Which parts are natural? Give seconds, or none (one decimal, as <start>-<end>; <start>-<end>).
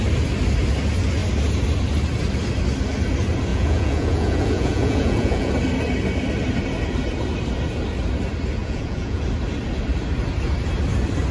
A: 0.0-3.5; 5.5-8.6; 9.2-11.3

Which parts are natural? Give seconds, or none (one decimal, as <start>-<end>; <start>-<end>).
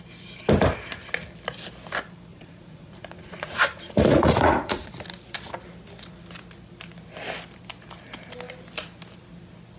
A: 0.0-2.3; 4.9-9.8